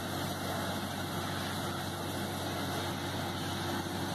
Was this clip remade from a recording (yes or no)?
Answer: no